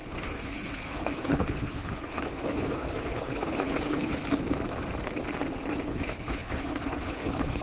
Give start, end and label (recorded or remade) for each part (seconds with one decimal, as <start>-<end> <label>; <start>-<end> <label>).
0.0-4.2 remade; 4.2-5.8 recorded; 5.8-7.6 remade